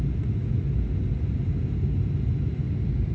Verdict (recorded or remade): recorded